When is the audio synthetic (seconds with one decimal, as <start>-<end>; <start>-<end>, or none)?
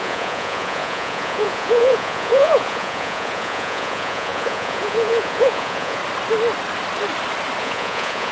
0.0-6.0; 7.6-8.3